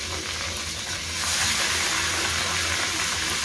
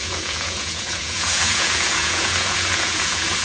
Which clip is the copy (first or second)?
second